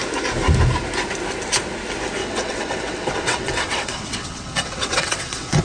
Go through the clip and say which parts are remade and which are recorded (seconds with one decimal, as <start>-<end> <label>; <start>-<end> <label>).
0.0-2.2 recorded; 2.2-5.6 remade